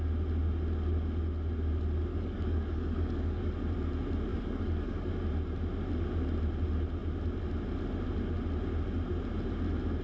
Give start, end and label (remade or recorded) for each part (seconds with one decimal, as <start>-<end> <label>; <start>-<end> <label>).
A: 0.0-2.1 recorded; 2.1-3.5 remade; 3.5-4.3 recorded; 4.3-5.1 remade; 5.1-10.0 recorded